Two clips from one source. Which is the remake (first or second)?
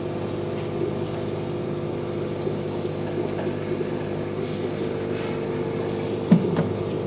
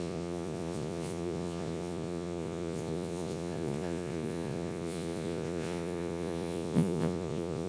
second